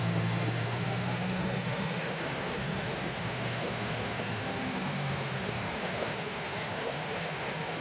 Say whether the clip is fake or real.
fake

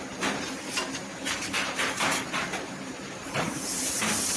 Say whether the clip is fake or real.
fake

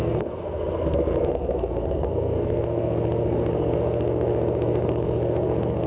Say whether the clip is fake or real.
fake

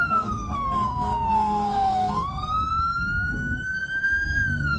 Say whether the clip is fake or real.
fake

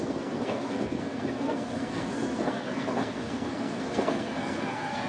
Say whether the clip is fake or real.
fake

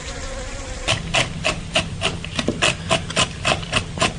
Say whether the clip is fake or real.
real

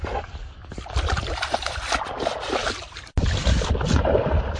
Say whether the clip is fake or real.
real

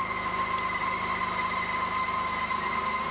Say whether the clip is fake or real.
real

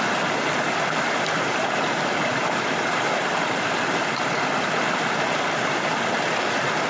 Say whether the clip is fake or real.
real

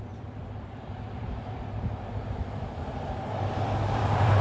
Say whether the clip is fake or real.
fake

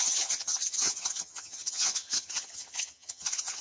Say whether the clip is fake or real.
fake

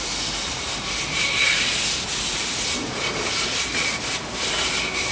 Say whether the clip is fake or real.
real